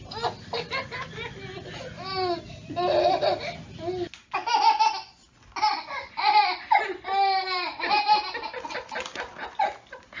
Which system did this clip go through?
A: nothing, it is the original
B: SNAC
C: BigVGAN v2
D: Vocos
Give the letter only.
A